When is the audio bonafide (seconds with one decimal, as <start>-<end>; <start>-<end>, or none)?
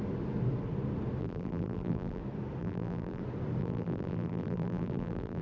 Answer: 0.0-1.2; 2.2-2.6; 3.2-3.6